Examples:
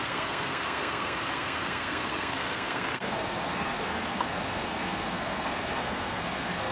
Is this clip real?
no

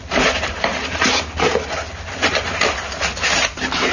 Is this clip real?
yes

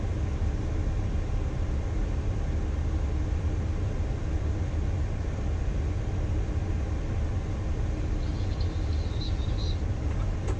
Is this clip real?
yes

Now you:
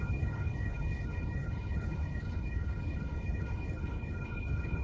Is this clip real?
no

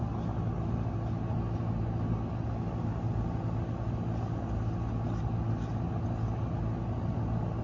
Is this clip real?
yes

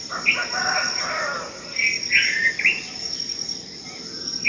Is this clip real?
yes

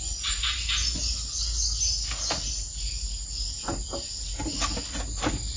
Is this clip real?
yes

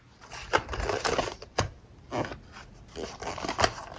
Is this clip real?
yes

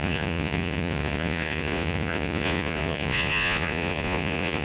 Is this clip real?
no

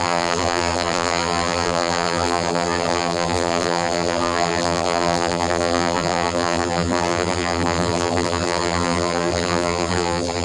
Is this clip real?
no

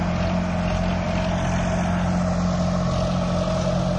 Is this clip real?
yes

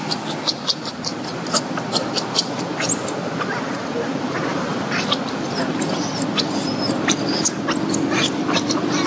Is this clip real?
yes